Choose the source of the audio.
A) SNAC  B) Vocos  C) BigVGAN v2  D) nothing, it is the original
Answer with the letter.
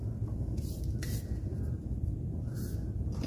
D